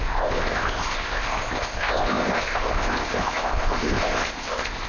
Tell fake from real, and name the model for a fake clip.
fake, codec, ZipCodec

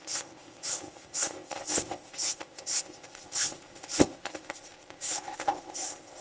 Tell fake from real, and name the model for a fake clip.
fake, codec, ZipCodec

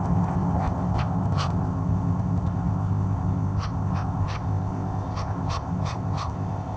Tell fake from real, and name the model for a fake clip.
fake, codec, ZipCodec